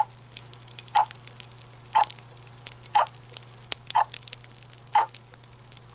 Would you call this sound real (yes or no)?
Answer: yes